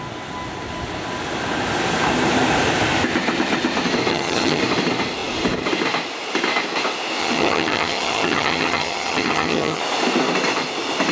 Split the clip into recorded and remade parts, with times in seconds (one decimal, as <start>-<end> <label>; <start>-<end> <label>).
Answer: 0.0-4.1 recorded; 4.1-4.6 remade; 4.6-7.2 recorded; 7.2-9.8 remade; 9.8-11.1 recorded

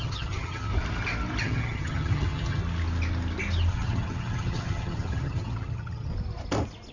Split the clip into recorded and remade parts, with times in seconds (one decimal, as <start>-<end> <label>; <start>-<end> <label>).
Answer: 0.0-0.7 remade; 0.7-1.4 recorded; 1.4-2.6 remade; 2.6-3.7 recorded; 3.7-6.1 remade; 6.1-6.9 recorded